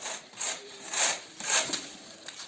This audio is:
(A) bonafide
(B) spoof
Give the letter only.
B